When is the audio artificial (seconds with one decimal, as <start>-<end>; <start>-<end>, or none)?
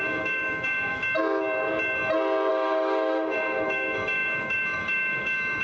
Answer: 0.0-1.0; 2.5-5.6